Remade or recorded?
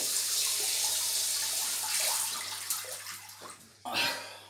recorded